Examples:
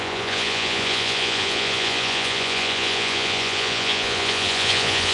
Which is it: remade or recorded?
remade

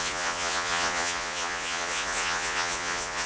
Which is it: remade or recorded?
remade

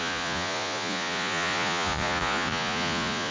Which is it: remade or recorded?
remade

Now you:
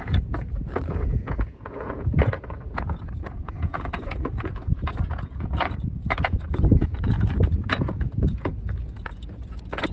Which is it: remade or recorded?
remade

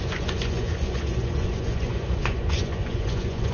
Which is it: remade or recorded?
remade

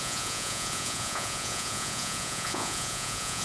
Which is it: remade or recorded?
remade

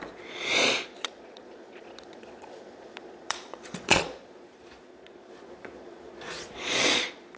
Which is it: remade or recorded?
remade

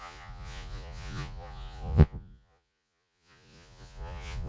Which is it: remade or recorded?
remade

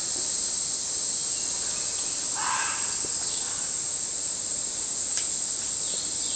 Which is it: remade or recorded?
recorded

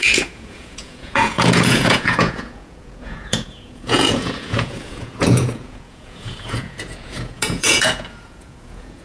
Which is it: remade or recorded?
remade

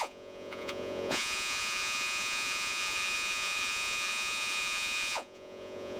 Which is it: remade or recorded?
remade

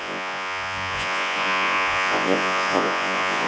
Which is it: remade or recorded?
remade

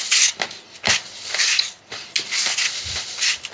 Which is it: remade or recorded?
recorded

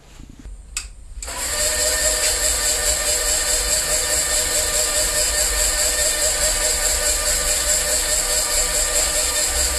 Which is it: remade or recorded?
recorded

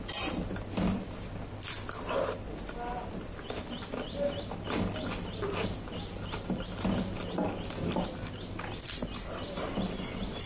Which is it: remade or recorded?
recorded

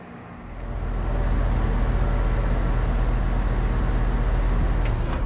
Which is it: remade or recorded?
recorded